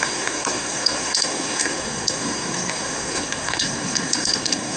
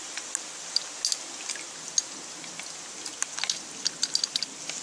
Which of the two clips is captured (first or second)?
second